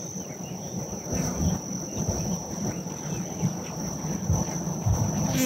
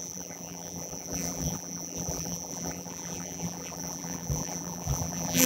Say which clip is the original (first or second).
first